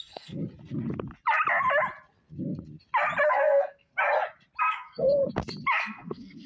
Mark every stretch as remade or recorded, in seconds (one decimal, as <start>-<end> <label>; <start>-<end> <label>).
0.0-0.4 remade; 0.4-3.3 recorded; 3.3-3.9 remade; 3.9-4.6 recorded; 4.6-5.2 remade; 5.2-5.8 recorded; 5.8-6.5 remade